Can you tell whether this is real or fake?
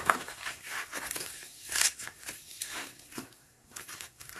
fake